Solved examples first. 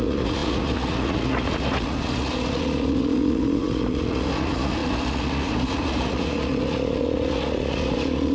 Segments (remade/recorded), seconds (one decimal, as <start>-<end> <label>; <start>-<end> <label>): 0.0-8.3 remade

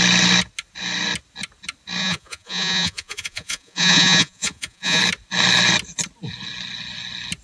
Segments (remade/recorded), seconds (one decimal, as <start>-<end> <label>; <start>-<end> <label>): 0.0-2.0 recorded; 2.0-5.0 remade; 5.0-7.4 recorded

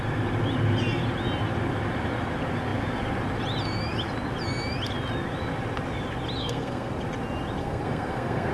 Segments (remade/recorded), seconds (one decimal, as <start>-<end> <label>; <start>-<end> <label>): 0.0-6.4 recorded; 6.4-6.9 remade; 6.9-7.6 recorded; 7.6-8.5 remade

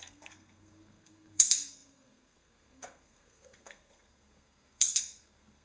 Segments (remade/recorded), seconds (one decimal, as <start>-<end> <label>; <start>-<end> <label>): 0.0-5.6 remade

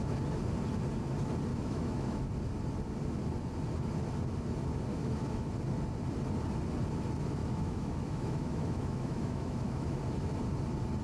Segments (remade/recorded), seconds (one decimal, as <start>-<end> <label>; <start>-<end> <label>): 0.0-1.5 recorded; 1.5-2.3 remade; 2.3-4.9 recorded; 4.9-5.5 remade; 5.5-7.4 recorded; 7.4-10.0 remade; 10.0-11.0 recorded